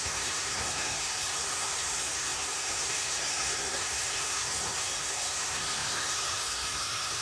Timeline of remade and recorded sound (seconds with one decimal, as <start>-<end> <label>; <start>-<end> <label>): 0.0-7.2 remade